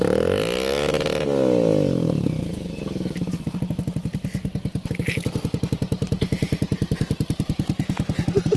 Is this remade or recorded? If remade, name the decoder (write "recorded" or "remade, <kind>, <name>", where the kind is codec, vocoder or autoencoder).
recorded